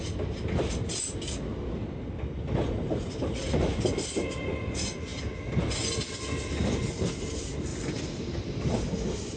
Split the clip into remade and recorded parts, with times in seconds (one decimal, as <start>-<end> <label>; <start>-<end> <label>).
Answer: 0.0-9.4 recorded